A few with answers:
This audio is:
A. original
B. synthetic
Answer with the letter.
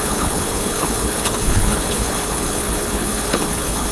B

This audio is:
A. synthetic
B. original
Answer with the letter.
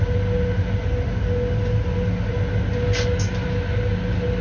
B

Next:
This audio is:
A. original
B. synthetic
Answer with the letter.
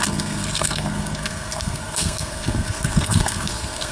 B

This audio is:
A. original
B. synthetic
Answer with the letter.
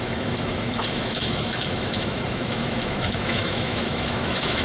B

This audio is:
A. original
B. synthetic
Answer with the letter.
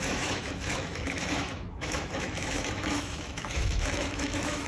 B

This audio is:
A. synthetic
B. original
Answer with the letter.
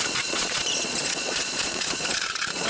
A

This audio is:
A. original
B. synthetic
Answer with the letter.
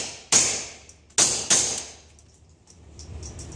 A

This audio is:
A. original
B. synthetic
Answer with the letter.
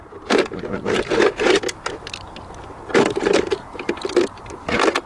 A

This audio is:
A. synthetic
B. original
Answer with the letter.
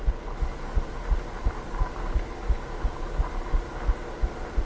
B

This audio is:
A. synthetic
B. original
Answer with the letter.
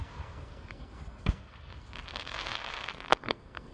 A